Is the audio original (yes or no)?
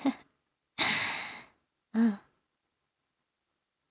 yes